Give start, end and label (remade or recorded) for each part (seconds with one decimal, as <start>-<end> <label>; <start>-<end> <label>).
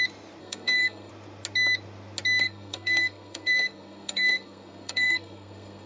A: 0.0-0.4 recorded; 0.4-1.1 remade; 1.1-2.4 recorded; 2.4-5.9 remade